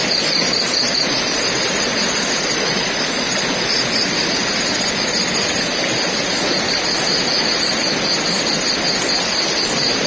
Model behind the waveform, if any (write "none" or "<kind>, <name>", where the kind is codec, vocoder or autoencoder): none